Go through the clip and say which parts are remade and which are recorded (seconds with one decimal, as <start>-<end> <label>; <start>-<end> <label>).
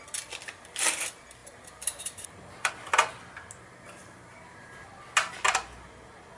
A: 0.0-1.4 recorded; 1.4-2.7 remade; 2.7-4.0 recorded; 4.0-4.9 remade; 4.9-6.4 recorded